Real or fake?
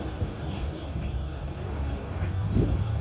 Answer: fake